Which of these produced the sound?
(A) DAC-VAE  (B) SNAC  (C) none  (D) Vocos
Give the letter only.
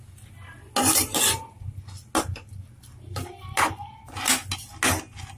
C